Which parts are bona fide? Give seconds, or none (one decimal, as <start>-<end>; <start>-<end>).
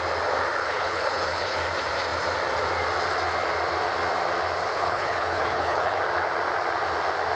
0.0-0.6; 1.6-4.7; 6.0-7.4